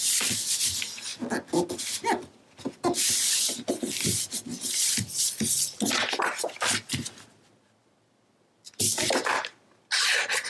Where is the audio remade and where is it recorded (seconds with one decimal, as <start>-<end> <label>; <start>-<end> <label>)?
0.0-10.5 recorded

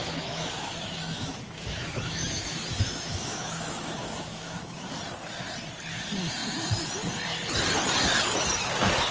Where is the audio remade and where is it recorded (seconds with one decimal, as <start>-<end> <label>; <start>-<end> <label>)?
0.0-5.0 remade; 5.0-9.1 recorded

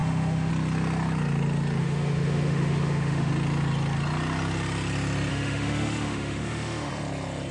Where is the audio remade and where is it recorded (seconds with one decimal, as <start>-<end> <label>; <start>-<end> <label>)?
0.0-0.5 remade; 0.5-1.8 recorded; 1.8-3.3 remade; 3.3-5.3 recorded; 5.3-6.9 remade; 6.9-7.5 recorded

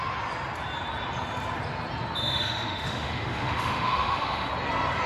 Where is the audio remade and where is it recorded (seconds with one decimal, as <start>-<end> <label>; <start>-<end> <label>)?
0.0-2.2 recorded; 2.2-4.5 remade; 4.5-5.1 recorded

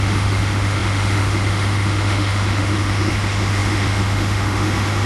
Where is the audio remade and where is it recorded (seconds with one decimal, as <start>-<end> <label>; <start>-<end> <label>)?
0.0-5.1 remade